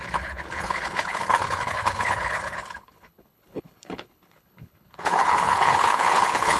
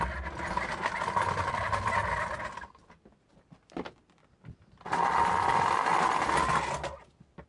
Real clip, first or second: second